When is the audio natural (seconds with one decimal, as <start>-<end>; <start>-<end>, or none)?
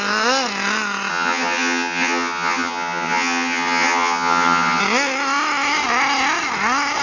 0.0-1.1; 4.8-7.0